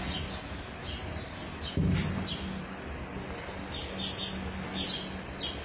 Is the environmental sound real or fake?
real